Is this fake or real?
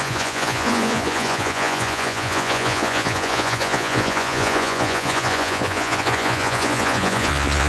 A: fake